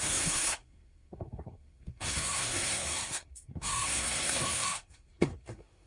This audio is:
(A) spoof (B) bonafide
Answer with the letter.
A